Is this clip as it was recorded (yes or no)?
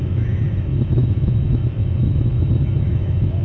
no